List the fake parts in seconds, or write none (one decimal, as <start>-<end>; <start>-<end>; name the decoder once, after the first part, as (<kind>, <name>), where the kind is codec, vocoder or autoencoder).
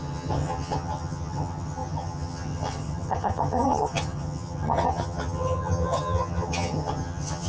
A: 0.0-7.5 (vocoder, HiFi-GAN)